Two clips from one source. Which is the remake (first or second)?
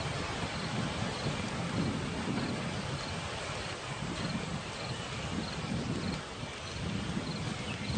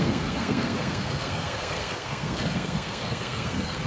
second